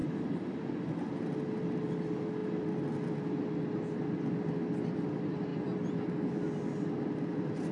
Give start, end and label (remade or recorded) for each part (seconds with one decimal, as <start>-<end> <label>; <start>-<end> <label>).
0.0-7.7 recorded